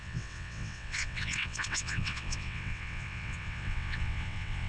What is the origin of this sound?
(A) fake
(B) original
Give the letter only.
A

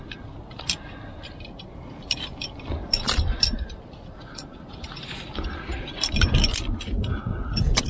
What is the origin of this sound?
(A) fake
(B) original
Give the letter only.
B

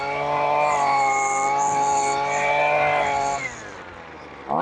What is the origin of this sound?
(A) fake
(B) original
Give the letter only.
B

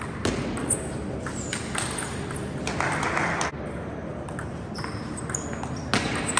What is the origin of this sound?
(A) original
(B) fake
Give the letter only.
A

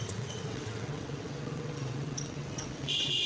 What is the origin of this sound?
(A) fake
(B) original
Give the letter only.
A